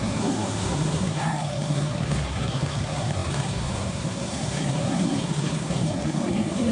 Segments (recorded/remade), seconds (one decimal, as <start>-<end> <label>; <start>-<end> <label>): 0.0-6.7 remade